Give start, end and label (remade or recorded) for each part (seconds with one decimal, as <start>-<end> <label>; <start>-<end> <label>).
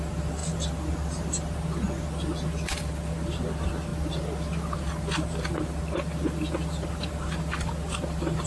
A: 0.0-8.5 recorded